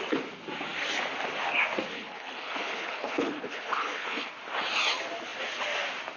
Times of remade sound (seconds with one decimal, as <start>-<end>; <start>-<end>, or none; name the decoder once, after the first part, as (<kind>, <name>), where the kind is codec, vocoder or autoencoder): 1.9-4.3 (codec, HILCodec)